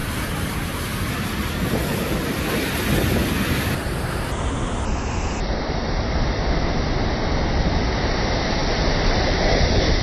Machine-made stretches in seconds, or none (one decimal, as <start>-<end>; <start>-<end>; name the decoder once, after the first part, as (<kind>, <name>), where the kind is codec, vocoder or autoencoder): 0.0-1.7 (vocoder, BigVGAN v2); 8.6-9.6